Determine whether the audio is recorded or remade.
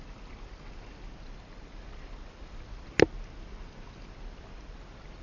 recorded